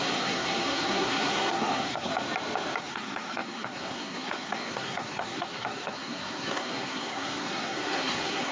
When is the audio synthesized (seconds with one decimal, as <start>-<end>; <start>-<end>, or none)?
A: 0.0-2.1; 2.8-8.5